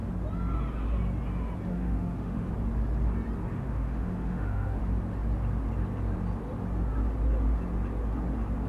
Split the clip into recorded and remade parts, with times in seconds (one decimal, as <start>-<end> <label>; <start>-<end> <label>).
0.0-1.7 recorded; 1.7-2.5 remade; 2.5-3.5 recorded; 3.5-4.8 remade; 4.8-8.7 recorded